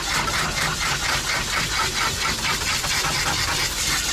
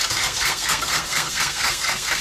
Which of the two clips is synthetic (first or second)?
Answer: second